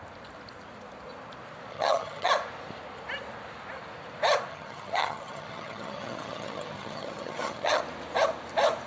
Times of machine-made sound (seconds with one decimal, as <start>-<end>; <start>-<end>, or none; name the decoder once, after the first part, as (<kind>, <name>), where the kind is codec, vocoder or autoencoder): 1.7-2.3 (vocoder, HiFi-GAN); 4.5-7.8